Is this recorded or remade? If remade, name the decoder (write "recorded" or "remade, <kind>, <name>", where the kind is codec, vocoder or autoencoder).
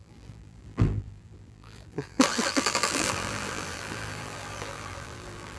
remade, vocoder, BigVGAN v2